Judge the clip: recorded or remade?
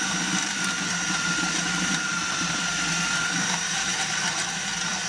remade